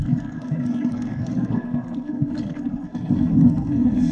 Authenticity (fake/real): fake